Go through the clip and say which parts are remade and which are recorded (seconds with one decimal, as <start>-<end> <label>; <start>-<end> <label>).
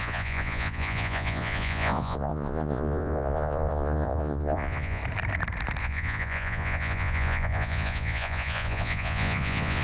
0.0-5.0 remade; 5.0-5.8 recorded; 5.8-9.8 remade